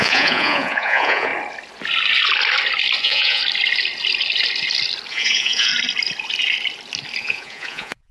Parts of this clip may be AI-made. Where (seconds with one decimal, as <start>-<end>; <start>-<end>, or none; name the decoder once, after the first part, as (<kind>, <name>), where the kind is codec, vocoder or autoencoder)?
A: 0.0-1.3 (vocoder, Vocos); 3.0-3.4; 5.1-5.7; 7.2-8.1